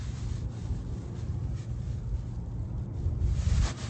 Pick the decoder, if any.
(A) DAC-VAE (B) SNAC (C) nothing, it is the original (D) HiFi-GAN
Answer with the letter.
C